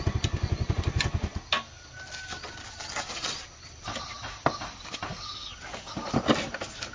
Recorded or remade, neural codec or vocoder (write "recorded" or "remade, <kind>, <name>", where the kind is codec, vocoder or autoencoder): recorded